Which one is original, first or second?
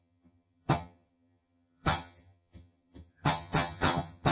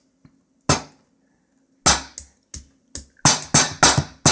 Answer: second